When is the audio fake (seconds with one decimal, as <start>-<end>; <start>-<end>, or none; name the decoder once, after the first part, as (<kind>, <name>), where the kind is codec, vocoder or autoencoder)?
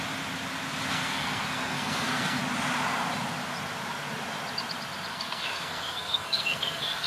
0.9-2.4 (codec, SNAC); 5.1-7.1